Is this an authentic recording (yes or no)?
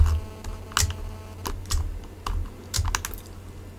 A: yes